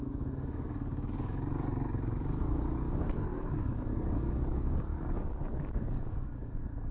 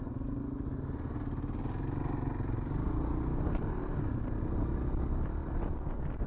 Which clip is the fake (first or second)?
first